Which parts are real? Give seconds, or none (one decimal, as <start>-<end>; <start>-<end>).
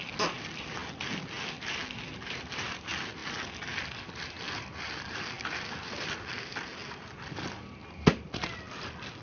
0.0-9.2